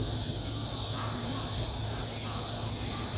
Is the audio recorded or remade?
recorded